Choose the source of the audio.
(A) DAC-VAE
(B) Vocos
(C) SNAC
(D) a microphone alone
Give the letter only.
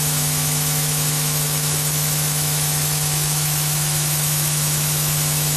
A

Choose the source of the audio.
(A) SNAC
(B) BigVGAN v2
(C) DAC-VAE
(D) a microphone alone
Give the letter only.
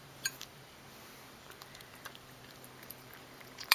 B